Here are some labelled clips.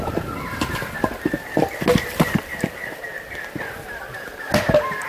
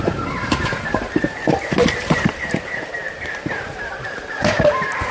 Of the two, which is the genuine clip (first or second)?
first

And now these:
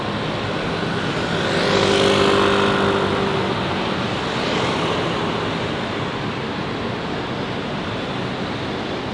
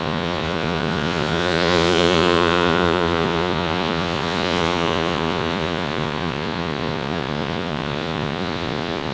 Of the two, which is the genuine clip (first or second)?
first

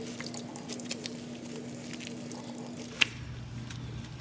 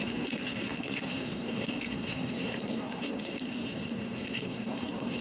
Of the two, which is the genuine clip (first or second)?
first